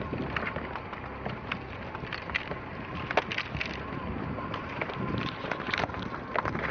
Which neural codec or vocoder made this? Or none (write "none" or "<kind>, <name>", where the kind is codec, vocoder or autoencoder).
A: none